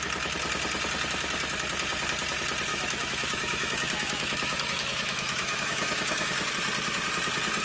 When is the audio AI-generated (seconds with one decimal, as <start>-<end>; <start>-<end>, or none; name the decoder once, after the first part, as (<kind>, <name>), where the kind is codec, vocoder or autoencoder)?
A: 2.7-6.5 (autoencoder, DAC-VAE)